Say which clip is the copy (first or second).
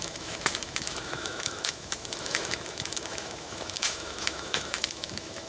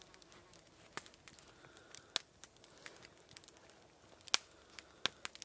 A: first